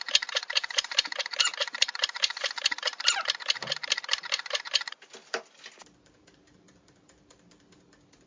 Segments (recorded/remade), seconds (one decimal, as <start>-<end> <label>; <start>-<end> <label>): 0.0-2.9 remade; 2.9-6.0 recorded; 6.0-8.3 remade

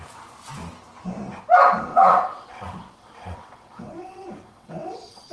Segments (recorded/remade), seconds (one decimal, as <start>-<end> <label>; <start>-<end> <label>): 0.0-1.9 recorded; 1.9-5.3 remade

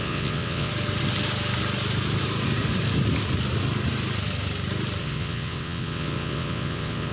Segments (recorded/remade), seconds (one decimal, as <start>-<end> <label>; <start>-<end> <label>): 0.0-0.7 remade; 0.7-5.0 recorded; 5.0-7.1 remade

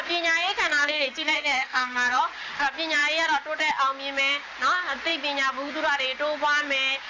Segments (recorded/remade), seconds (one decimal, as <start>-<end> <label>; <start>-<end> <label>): 0.0-0.8 recorded; 0.8-2.2 remade; 2.2-7.1 recorded

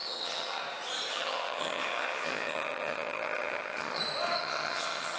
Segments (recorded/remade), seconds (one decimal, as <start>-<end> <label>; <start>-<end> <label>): 0.0-0.6 remade; 0.6-1.1 recorded; 1.1-4.0 remade; 4.0-4.4 recorded; 4.4-5.2 remade